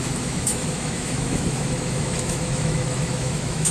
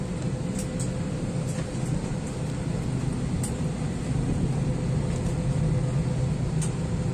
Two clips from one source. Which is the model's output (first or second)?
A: first